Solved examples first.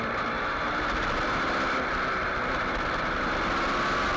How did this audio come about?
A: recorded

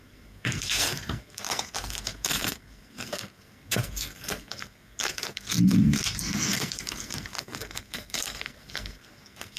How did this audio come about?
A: remade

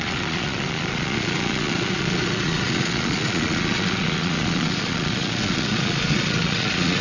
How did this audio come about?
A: remade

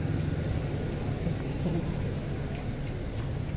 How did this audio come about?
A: recorded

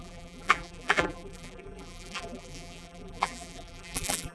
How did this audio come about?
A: remade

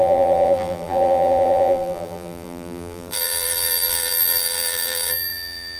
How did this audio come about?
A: remade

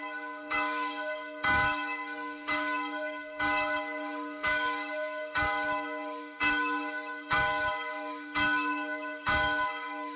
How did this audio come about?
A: remade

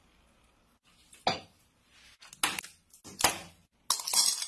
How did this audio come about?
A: recorded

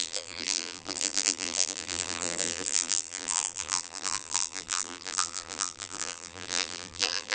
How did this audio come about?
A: remade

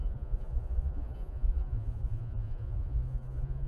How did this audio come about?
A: remade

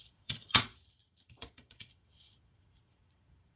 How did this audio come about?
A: remade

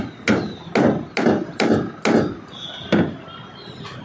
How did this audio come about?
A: recorded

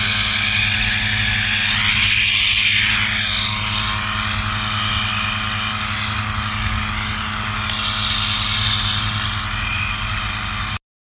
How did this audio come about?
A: recorded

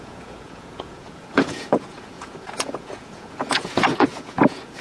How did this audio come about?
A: remade